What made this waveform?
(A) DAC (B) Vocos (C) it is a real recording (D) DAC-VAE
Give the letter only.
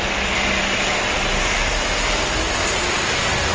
C